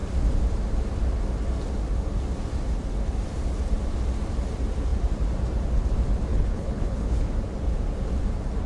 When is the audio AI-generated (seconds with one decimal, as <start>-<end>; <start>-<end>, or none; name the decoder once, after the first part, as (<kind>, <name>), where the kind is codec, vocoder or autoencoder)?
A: 6.3-7.3 (codec, HILCodec)